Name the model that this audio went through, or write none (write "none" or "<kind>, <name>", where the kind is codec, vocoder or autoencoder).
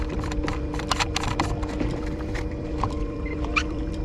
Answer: vocoder, BigVGAN v2